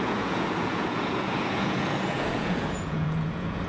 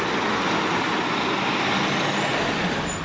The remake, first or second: first